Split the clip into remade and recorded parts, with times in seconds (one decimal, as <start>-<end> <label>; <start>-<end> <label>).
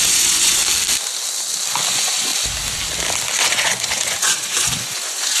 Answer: 0.0-0.6 remade; 0.6-1.9 recorded; 1.9-2.3 remade; 2.3-3.4 recorded; 3.4-5.4 remade